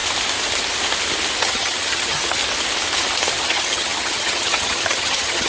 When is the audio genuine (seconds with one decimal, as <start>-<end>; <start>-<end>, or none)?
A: 0.0-1.4; 2.4-3.4

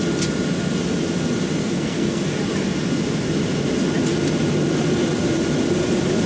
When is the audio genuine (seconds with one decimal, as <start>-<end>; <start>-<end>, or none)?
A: 0.0-1.6; 2.2-6.3

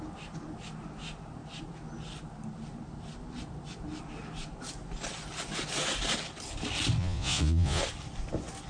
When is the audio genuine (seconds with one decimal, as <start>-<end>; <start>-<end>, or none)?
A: 0.0-7.0; 7.8-8.7

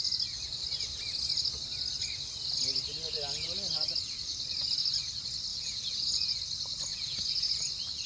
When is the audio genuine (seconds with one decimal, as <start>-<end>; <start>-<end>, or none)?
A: 0.0-5.5; 6.4-6.9; 7.5-8.1